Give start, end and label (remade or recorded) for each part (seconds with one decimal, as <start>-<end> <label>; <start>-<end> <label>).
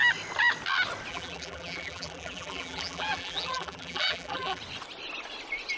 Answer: 0.0-1.1 recorded; 1.1-4.6 remade; 4.6-5.8 recorded